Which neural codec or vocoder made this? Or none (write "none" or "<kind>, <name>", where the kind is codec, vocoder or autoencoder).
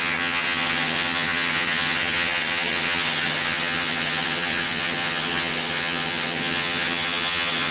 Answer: vocoder, HiFi-GAN